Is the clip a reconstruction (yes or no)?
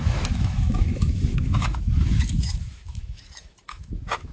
yes